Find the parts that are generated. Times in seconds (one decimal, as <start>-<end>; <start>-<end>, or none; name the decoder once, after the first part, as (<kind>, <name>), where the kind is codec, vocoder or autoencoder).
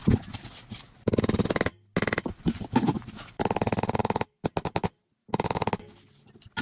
none